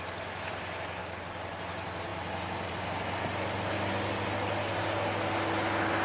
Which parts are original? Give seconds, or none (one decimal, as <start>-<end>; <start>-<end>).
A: 0.0-4.6; 5.2-6.0